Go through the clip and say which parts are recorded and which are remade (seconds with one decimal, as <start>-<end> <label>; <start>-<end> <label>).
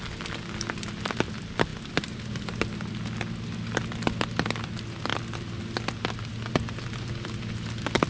0.0-8.1 recorded